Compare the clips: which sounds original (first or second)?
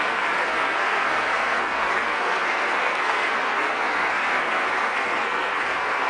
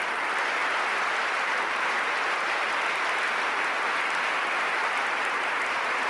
second